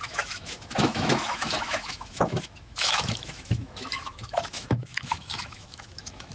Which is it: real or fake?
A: fake